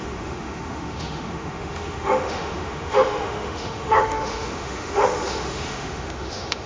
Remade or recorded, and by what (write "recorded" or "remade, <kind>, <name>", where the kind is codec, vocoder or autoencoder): remade, autoencoder, DAC-VAE